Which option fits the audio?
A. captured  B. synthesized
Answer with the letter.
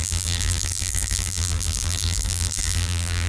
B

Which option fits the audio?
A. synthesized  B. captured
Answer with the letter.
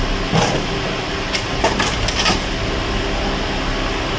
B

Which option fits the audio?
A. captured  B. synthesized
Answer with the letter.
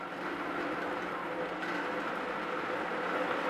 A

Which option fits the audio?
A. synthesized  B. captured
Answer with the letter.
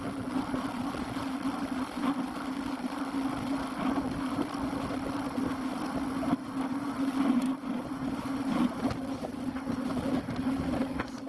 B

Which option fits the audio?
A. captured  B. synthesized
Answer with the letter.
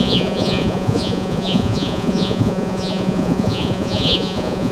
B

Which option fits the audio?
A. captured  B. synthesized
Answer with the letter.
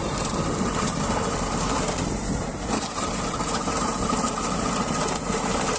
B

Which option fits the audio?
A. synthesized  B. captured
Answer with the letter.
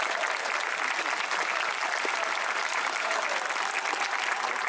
B